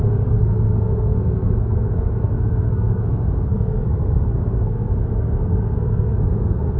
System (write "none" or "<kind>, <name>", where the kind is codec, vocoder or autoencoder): codec, SNAC